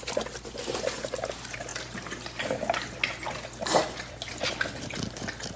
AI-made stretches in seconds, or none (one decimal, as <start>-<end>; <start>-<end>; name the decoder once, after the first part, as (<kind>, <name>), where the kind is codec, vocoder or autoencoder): none